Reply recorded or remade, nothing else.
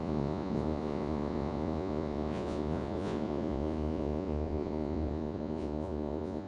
remade